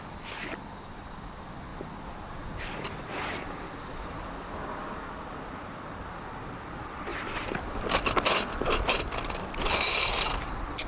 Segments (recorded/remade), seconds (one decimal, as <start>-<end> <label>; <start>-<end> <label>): 0.0-10.9 recorded